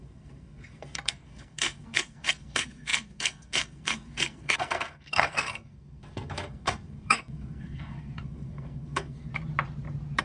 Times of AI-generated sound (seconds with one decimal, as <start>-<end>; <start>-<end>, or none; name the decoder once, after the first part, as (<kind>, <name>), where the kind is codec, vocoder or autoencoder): 0.0-9.3 (codec, SNAC)